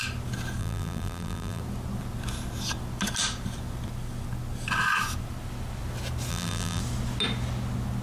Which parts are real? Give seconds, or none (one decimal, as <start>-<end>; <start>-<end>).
0.0-0.6; 1.6-6.3; 6.8-8.0